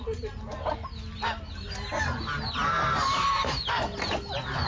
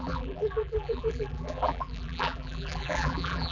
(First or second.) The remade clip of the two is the second